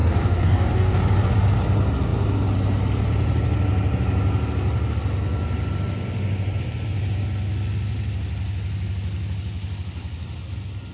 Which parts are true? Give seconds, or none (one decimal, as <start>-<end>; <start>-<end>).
1.0-10.9

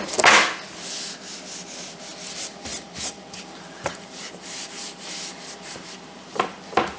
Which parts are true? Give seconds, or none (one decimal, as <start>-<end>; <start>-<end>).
0.0-2.7; 6.6-7.0

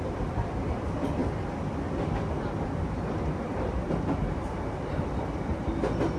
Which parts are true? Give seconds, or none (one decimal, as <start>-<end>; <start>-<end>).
0.0-6.2

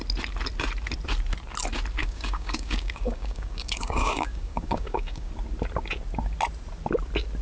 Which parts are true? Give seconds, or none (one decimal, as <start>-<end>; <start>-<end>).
0.0-2.0; 5.3-7.4

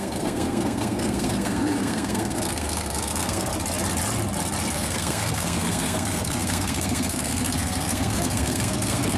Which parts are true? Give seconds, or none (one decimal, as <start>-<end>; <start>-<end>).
3.5-4.7

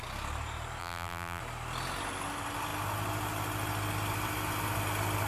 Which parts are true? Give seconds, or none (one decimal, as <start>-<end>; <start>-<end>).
0.0-0.8; 1.4-5.3

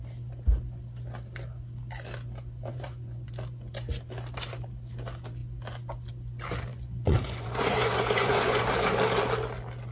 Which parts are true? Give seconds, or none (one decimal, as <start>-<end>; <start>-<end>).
0.0-2.7; 3.3-6.7; 8.7-9.9

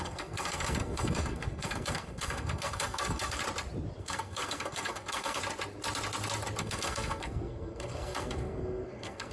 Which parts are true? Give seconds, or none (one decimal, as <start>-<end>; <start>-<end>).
3.4-4.0; 5.4-6.6